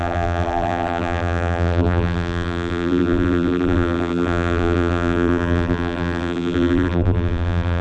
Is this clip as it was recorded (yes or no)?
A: no